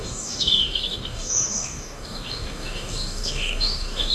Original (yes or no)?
no